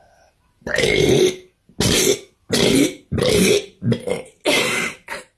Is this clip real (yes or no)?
yes